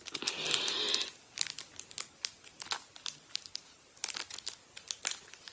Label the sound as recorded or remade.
recorded